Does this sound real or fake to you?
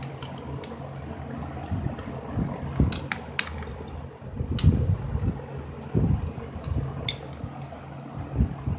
real